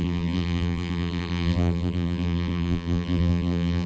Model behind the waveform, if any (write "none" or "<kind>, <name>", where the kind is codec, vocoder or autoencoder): vocoder, BigVGAN v2